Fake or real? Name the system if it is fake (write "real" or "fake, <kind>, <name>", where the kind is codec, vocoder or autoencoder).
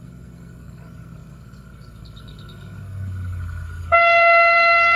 fake, codec, SNAC